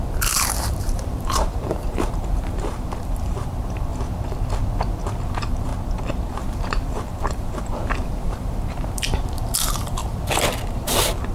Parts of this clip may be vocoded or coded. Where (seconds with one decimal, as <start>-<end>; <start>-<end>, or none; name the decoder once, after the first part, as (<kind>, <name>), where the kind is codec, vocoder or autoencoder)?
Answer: 0.0-3.9 (vocoder, BigVGAN v2); 5.3-5.7; 6.3-10.0; 10.7-11.3